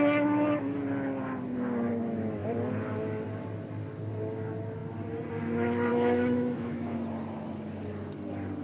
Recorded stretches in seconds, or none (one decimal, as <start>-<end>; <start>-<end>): 0.0-5.9; 7.0-8.6